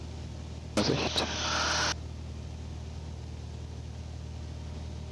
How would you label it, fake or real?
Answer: real